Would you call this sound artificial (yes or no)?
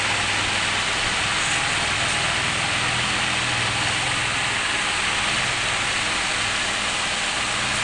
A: no